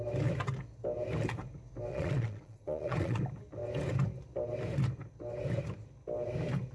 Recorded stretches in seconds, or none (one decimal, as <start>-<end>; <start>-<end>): 0.0-1.9; 3.2-6.7

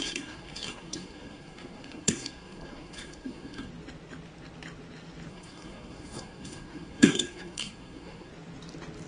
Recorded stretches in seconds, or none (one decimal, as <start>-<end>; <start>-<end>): 3.7-5.3; 8.3-9.1